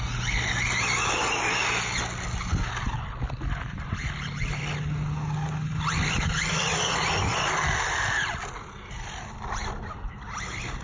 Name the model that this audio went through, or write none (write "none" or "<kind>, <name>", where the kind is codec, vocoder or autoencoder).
none